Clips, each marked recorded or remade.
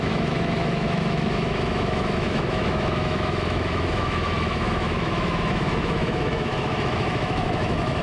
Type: remade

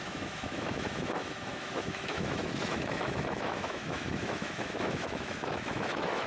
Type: remade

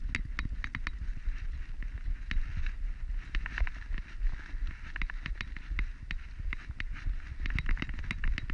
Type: recorded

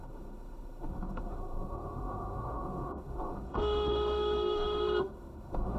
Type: remade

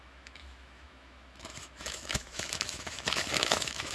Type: remade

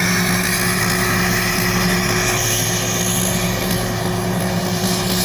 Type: recorded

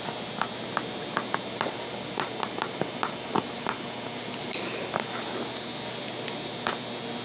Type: recorded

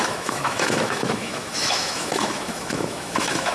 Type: remade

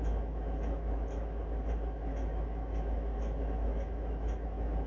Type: remade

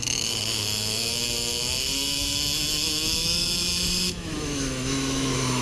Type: remade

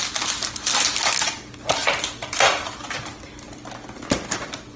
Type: recorded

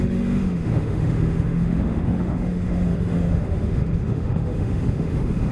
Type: remade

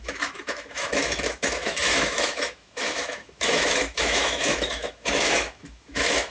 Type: remade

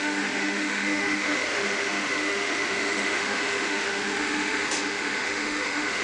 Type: remade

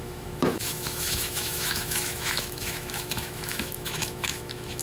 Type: remade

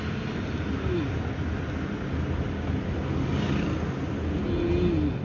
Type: recorded